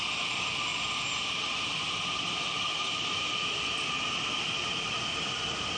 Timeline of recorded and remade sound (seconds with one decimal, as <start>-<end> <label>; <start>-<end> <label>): 0.0-5.8 recorded